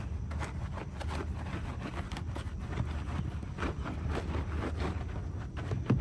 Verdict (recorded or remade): recorded